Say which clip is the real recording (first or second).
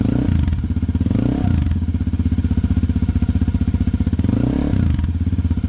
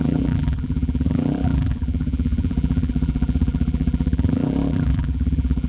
first